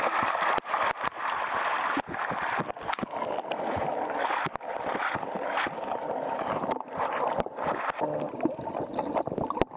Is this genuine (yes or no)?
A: yes